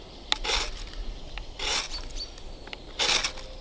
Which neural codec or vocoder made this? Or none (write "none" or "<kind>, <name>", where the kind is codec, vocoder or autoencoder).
none